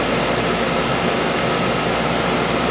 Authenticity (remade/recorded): recorded